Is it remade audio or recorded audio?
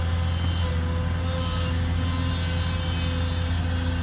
recorded